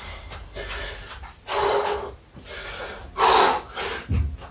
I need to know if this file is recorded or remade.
recorded